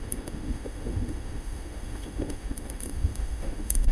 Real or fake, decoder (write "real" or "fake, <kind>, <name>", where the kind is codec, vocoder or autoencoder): fake, autoencoder, DAC-VAE